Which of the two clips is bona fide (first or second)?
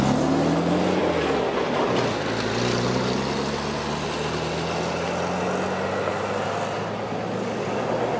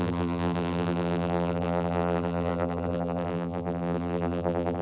first